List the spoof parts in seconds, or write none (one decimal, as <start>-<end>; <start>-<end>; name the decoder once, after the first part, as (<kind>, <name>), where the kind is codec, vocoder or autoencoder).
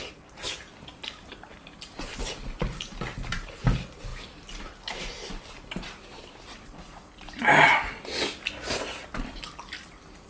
none